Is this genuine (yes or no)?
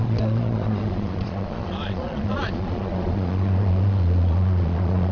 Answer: no